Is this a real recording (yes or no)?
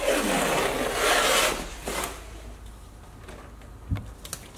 yes